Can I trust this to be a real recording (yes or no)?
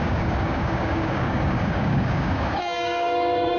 no